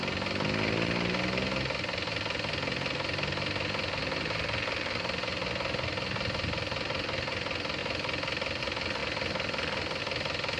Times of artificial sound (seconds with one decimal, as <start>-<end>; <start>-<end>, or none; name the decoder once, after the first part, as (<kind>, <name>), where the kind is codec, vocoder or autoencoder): none